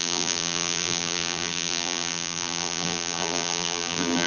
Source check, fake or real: fake